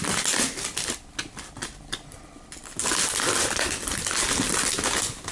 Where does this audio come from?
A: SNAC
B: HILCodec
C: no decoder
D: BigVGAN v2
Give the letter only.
C